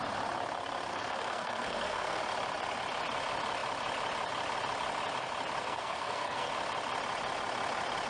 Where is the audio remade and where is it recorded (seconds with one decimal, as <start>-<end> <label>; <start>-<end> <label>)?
0.0-0.9 recorded; 0.9-2.2 remade; 2.2-5.6 recorded; 5.6-6.5 remade; 6.5-8.1 recorded